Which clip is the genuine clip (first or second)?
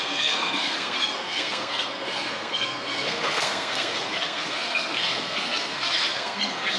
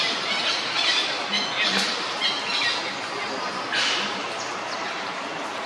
second